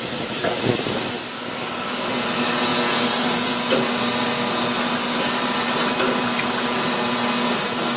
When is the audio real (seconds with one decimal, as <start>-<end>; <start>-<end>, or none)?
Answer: 0.0-8.0